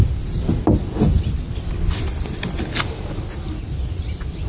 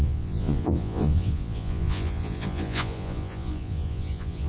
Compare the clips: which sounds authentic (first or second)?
first